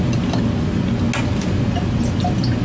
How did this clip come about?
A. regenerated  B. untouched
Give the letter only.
B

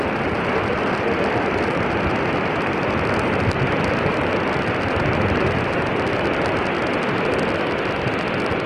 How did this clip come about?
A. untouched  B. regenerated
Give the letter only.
A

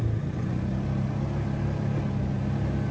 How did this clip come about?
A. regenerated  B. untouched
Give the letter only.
B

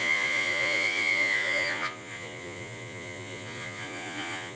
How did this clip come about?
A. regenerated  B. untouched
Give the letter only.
A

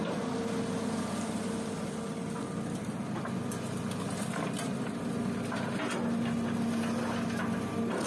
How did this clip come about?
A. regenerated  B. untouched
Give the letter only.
B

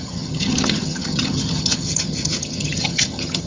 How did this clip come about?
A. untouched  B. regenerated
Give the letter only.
B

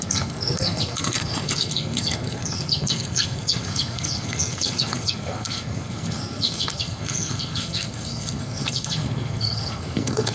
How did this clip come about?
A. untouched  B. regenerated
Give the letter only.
B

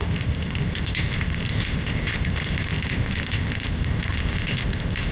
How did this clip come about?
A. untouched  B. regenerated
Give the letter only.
B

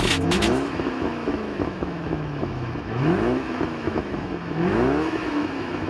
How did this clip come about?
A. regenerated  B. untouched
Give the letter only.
A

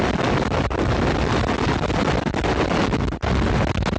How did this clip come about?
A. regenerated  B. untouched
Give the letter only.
B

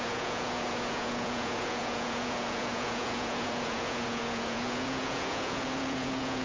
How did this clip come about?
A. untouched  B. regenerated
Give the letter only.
B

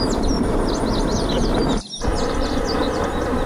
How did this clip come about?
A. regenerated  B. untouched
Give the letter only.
B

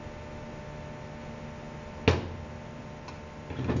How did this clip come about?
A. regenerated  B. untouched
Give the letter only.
B